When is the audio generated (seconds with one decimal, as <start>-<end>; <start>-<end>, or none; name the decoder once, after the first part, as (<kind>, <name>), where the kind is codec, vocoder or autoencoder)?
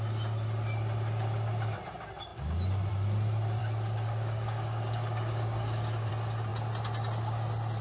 3.6-6.1 (codec, DAC)